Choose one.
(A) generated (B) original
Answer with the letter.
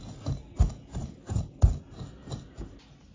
B